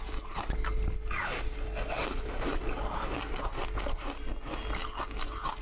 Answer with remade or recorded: recorded